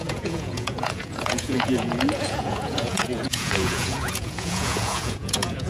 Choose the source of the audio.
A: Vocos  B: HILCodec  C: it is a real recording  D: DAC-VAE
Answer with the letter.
A